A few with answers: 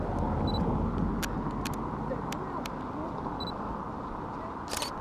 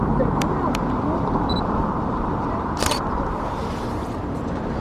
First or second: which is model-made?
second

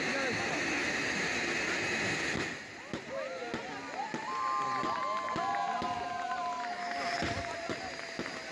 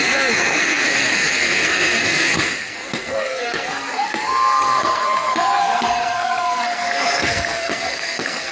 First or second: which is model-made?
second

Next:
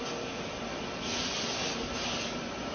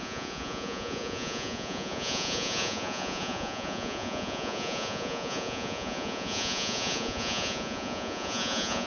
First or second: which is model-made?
second